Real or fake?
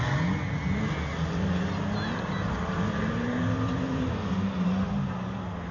real